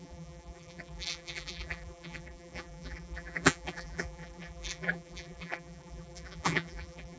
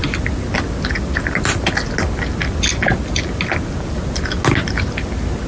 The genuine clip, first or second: second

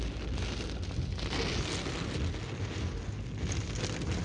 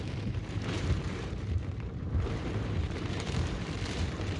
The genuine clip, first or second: first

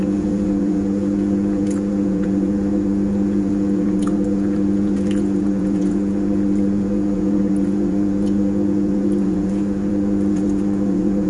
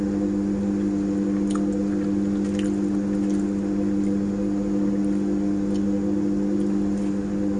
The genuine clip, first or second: second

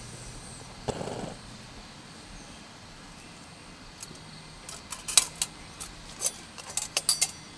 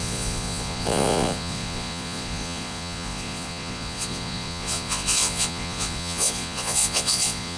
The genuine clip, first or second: first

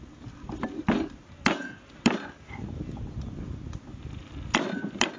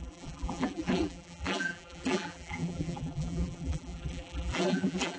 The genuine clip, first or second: first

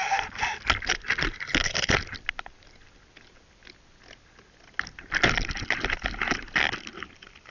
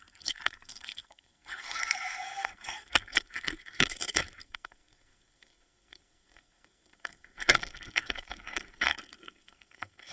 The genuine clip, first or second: first